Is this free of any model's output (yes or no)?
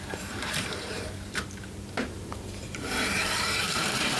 no